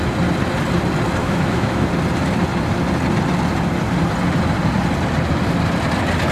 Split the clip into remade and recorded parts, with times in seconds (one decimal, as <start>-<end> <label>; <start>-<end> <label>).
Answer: 0.0-1.2 recorded; 1.2-1.9 remade; 1.9-6.3 recorded